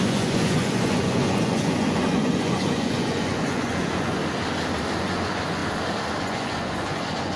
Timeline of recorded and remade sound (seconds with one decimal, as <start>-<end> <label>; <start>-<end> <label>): 0.0-4.2 remade; 4.2-5.0 recorded; 5.0-5.6 remade; 5.6-6.2 recorded; 6.2-7.4 remade

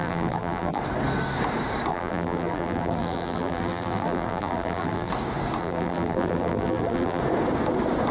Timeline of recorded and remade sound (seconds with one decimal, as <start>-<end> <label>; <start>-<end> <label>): 0.0-0.8 remade; 0.8-1.9 recorded; 1.9-5.1 remade; 5.1-5.6 recorded; 5.6-7.2 remade; 7.2-8.1 recorded

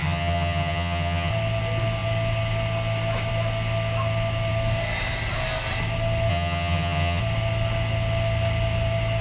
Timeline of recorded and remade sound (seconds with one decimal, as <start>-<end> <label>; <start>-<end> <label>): 0.0-1.3 remade; 1.3-6.3 recorded; 6.3-7.2 remade; 7.2-9.2 recorded

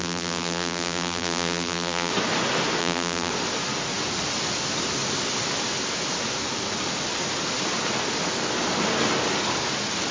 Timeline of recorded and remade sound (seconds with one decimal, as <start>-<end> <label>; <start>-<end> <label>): 0.0-2.1 remade; 2.1-2.8 recorded; 2.8-3.3 remade; 3.3-10.1 recorded

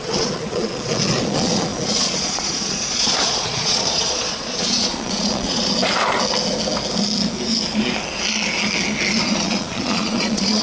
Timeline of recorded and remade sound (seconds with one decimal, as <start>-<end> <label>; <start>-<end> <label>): 0.0-5.8 remade; 5.8-9.2 recorded; 9.2-10.6 remade

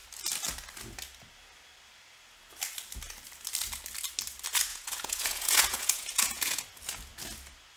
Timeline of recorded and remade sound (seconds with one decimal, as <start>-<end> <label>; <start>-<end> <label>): 0.0-4.7 recorded; 4.7-6.6 remade; 6.6-7.8 recorded

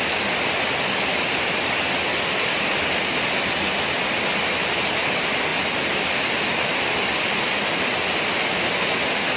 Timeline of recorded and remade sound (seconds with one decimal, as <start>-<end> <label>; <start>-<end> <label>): 0.0-9.4 recorded

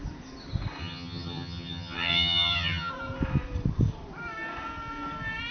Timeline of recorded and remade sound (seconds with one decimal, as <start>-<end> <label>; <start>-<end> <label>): 0.0-0.8 recorded; 0.8-2.9 remade; 2.9-5.5 recorded